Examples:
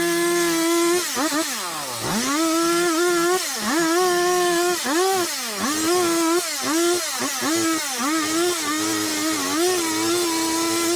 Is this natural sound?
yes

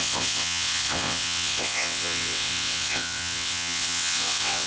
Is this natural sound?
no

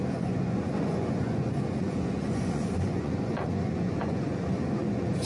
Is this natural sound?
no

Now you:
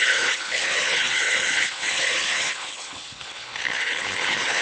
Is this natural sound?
no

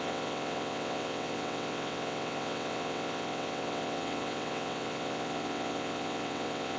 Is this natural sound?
no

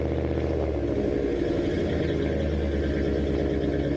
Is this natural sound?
yes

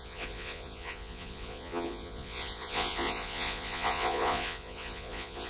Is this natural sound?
no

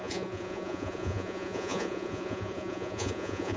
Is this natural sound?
no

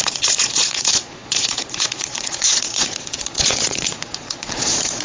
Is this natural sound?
no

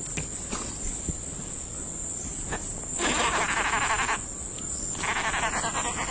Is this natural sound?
yes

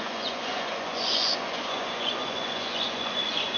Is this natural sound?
no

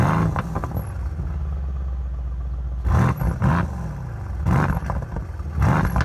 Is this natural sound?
yes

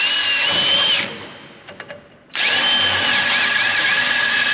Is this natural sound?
yes